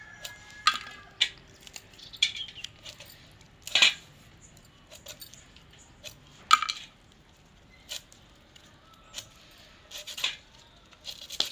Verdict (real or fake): real